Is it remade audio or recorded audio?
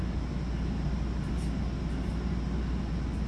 recorded